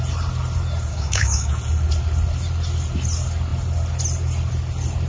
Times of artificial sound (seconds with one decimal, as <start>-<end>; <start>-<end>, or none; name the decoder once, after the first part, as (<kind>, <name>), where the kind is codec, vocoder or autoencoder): 0.9-1.5 (codec, DAC)